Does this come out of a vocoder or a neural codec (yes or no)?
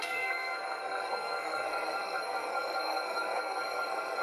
yes